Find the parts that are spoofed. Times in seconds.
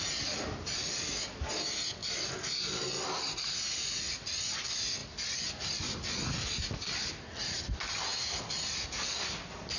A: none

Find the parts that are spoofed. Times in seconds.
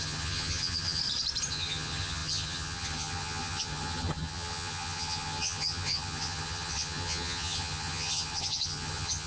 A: 0.0-1.0 (vocoder, HiFi-GAN); 1.5-9.3